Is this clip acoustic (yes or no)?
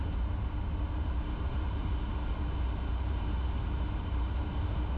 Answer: yes